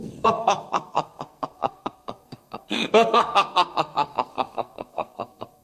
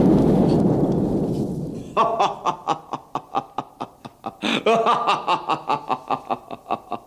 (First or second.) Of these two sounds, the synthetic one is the first